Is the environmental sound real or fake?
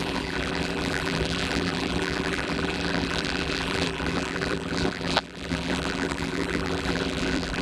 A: fake